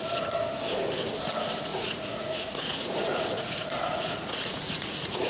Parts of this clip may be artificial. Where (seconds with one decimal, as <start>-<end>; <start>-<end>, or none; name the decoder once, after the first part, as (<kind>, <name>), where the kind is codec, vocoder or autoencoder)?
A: 1.7-5.3 (vocoder, Vocos)

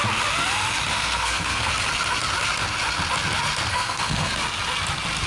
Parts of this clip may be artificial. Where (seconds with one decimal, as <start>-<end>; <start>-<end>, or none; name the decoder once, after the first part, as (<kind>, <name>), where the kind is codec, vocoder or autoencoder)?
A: 0.9-1.7 (codec, SNAC); 3.7-4.3

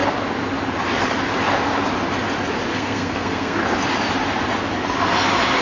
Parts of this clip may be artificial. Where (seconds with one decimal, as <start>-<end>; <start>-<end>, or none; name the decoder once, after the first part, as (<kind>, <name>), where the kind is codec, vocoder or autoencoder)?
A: 2.7-3.6 (codec, SNAC)

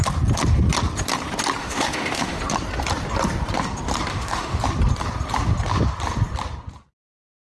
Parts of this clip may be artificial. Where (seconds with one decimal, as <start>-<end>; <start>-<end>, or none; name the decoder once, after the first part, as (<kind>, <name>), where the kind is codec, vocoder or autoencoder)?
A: 1.6-2.4 (autoencoder, DAC-VAE); 4.1-4.6

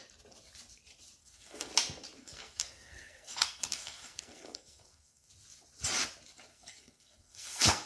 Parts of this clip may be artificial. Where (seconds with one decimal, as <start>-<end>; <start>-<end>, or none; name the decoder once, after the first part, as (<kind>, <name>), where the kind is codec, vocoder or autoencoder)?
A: 1.2-1.7 (codec, SNAC); 2.2-5.3; 6.5-7.9